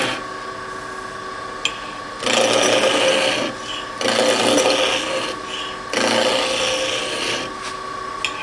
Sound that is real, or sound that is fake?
real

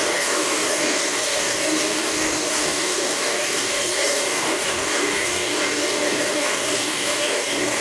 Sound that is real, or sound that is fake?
fake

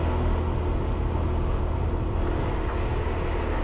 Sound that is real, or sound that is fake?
real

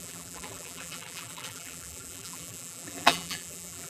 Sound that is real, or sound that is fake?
fake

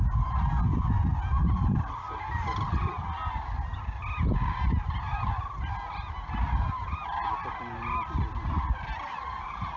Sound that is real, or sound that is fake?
real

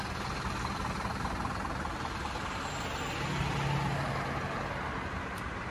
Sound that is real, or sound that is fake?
real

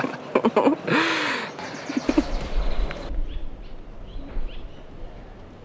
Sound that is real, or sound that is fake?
real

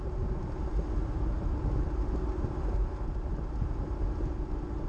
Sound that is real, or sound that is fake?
real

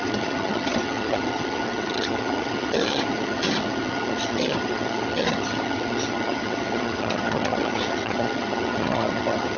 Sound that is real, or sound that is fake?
fake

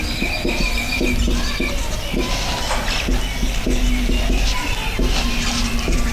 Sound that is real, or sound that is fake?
real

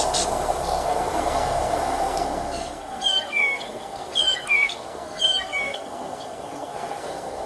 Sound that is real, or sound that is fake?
fake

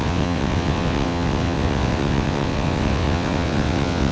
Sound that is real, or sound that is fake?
fake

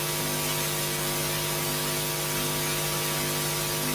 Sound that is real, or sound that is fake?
real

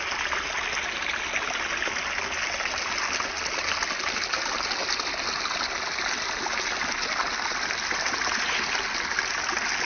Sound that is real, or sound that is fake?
real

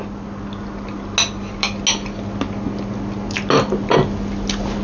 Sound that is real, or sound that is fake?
real